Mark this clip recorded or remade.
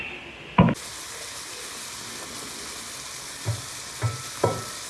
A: recorded